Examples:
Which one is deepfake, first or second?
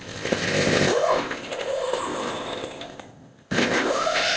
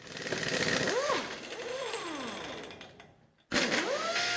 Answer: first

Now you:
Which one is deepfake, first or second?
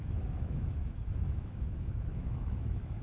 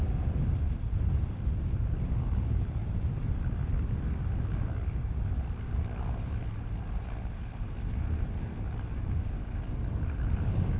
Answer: first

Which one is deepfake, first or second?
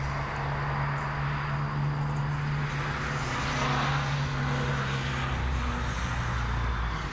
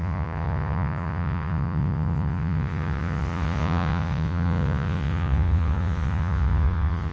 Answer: second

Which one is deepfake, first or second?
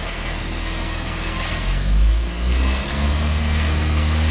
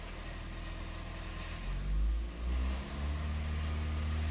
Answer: first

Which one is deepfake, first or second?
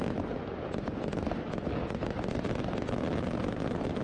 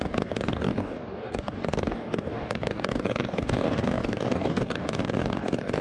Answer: second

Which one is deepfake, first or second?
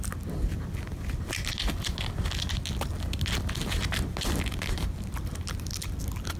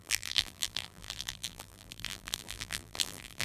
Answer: second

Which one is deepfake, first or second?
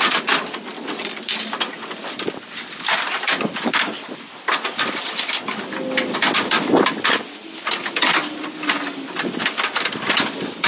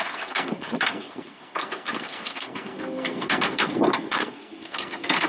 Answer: second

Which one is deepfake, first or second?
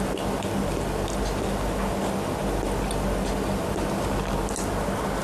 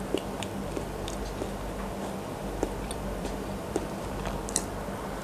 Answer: second